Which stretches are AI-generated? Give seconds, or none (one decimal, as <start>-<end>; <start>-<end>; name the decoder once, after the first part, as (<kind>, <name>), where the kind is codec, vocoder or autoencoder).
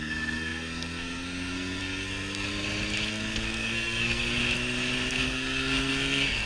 0.0-2.5 (codec, SNAC); 3.1-4.4; 5.1-6.5